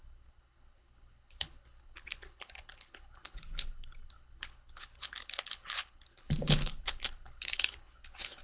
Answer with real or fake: fake